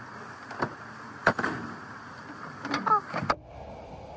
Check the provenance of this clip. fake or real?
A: real